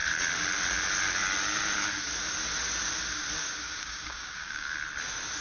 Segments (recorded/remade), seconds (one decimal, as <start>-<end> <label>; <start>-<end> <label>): 0.0-3.4 recorded; 3.4-4.7 remade; 4.7-5.4 recorded